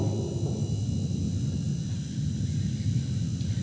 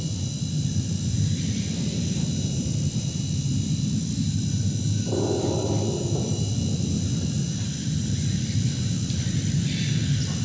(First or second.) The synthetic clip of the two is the second